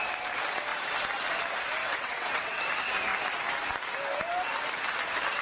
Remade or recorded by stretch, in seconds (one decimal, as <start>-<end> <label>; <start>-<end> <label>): 0.0-1.8 recorded; 1.8-2.6 remade; 2.6-5.4 recorded